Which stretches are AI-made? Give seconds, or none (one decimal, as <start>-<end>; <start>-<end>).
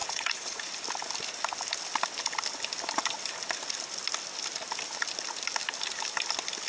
0.0-0.7